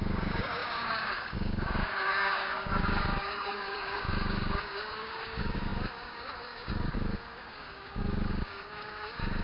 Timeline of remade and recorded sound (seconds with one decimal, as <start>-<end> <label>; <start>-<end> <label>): 0.0-9.4 remade